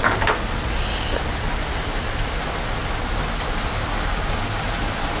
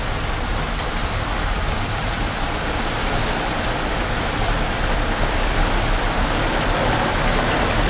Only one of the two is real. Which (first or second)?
first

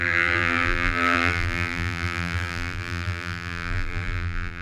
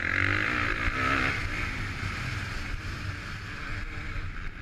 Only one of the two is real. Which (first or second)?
second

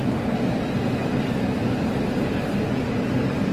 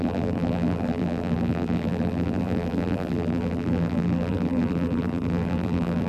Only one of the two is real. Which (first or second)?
first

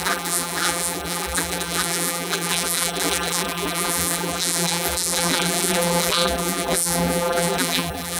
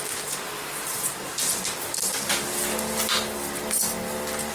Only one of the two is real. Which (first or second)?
second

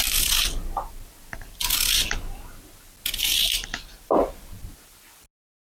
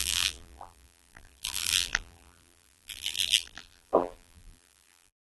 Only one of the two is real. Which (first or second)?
first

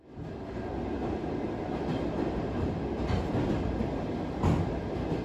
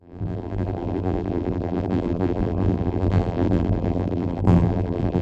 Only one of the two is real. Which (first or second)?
first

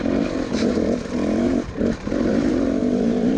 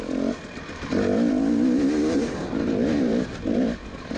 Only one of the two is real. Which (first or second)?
second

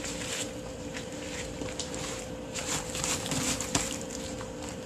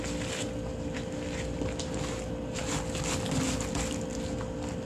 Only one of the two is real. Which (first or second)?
second